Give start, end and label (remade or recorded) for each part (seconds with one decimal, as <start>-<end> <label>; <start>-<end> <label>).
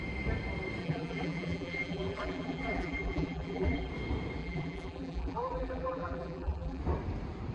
0.0-0.8 recorded; 0.8-3.9 remade; 3.9-4.4 recorded; 4.4-6.8 remade; 6.8-7.5 recorded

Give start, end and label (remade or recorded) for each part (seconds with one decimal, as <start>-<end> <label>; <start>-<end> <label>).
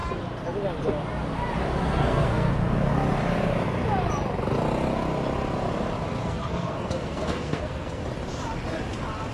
0.0-1.8 recorded; 1.8-2.5 remade; 2.5-6.2 recorded; 6.2-8.0 remade; 8.0-9.3 recorded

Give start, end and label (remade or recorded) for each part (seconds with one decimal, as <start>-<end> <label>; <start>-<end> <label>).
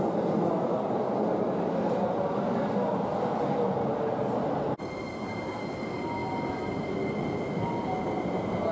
0.0-8.7 recorded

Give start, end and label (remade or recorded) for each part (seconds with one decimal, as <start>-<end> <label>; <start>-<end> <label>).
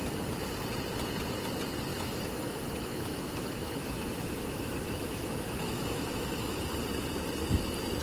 0.0-1.9 recorded; 1.9-6.7 remade; 6.7-8.0 recorded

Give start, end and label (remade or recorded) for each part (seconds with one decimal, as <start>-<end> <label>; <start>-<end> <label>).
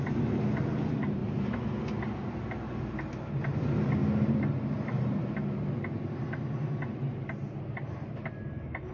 0.0-8.9 recorded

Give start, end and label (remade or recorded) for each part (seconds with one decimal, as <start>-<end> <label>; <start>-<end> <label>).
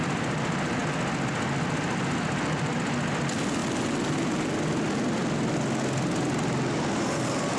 0.0-7.6 recorded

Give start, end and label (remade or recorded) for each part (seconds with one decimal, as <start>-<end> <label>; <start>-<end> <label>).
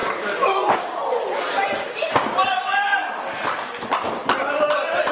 0.0-3.1 remade; 3.1-5.1 recorded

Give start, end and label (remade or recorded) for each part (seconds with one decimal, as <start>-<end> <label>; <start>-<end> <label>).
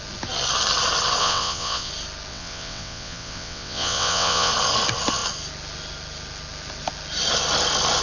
0.0-1.2 recorded; 1.2-1.9 remade; 1.9-2.3 recorded; 2.3-4.5 remade; 4.5-8.0 recorded